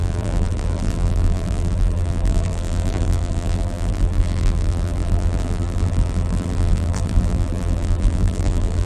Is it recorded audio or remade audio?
remade